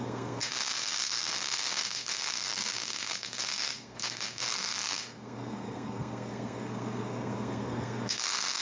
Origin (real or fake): fake